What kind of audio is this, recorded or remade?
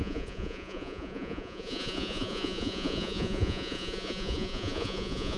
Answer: remade